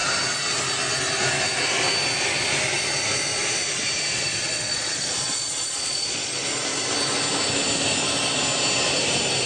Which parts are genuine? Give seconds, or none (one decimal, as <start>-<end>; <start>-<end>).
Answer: 0.0-4.1; 6.3-9.5